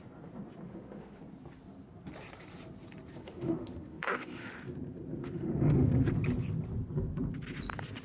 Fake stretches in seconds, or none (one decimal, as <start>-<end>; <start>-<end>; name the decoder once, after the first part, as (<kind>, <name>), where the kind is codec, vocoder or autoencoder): 0.7-1.2 (autoencoder, DAC-VAE); 3.2-4.5; 5.2-5.9